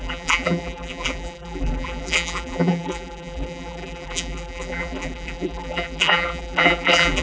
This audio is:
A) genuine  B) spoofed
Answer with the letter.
B